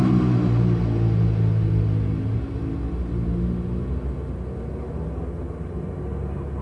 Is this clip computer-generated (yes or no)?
no